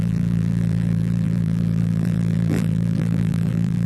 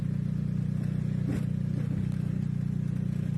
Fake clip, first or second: first